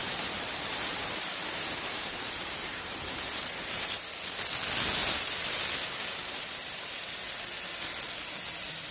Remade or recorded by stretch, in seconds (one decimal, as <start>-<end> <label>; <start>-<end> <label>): 0.0-4.0 remade; 4.0-5.0 recorded; 5.0-7.1 remade; 7.1-8.9 recorded